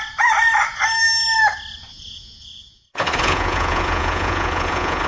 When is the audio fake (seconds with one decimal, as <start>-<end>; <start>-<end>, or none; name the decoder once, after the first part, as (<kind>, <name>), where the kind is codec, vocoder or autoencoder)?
1.9-5.1 (vocoder, Vocos)